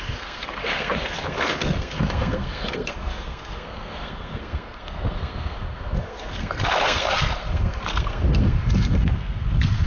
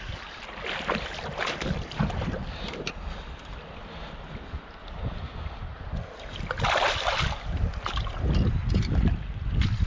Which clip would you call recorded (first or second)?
second